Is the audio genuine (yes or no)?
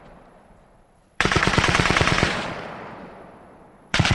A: no